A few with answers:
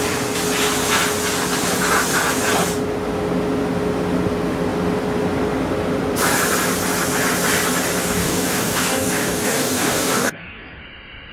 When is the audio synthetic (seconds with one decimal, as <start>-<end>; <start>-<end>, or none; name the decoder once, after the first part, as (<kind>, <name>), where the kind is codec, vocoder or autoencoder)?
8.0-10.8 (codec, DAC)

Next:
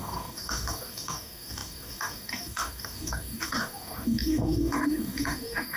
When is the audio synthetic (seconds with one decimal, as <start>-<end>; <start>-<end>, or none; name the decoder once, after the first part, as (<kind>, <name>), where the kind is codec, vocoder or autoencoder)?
0.0-5.8 (codec, DAC)

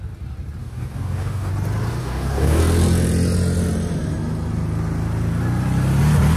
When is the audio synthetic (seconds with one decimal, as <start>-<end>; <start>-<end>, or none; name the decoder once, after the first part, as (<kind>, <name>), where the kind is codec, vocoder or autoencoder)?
0.6-1.5 (codec, DAC); 2.0-2.6

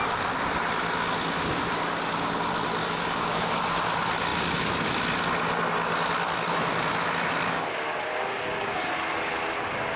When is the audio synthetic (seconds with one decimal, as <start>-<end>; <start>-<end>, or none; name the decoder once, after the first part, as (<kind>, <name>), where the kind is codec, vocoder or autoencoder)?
2.8-3.6 (codec, DAC); 8.3-8.9

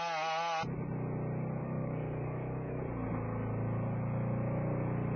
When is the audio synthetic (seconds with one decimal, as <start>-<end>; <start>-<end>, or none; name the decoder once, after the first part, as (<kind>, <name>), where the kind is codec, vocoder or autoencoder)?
1.6-2.8 (codec, DAC)

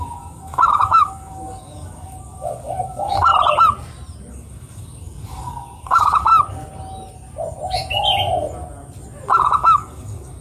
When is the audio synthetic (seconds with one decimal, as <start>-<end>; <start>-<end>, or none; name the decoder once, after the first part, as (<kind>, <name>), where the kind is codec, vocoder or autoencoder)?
0.0-3.3 (codec, DAC); 4.3-6.3; 9.3-10.4

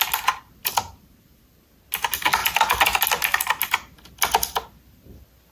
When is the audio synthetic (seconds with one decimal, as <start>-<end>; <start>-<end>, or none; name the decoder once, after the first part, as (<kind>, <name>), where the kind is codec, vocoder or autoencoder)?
none